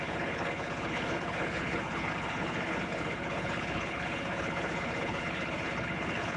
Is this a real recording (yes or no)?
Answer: no